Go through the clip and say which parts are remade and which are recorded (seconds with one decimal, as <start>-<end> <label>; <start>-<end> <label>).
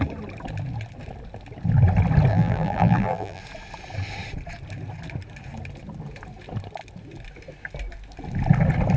0.0-2.3 recorded; 2.3-3.4 remade; 3.4-9.0 recorded